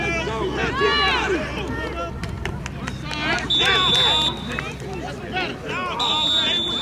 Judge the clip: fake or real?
real